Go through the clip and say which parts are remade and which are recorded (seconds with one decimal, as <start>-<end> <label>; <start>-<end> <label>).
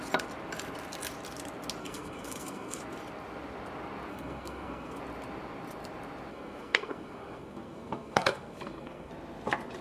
0.0-1.8 recorded; 1.8-2.8 remade; 2.8-4.1 recorded; 4.1-5.0 remade; 5.0-6.3 recorded; 6.3-9.1 remade; 9.1-9.8 recorded